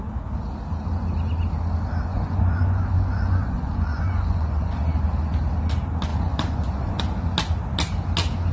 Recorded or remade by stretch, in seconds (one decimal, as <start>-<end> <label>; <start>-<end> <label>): 0.0-2.1 recorded; 2.1-4.8 remade; 4.8-6.1 recorded; 6.1-7.0 remade; 7.0-8.5 recorded